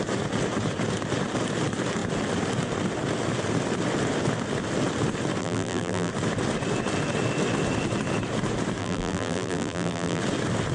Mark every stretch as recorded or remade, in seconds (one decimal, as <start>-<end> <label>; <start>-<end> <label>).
0.0-5.4 recorded; 5.4-6.1 remade; 6.1-8.8 recorded; 8.8-10.2 remade; 10.2-10.7 recorded